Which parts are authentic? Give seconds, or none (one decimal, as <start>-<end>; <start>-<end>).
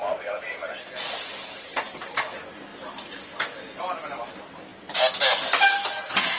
0.0-6.4